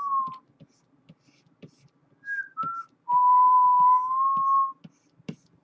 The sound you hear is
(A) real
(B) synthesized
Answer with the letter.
A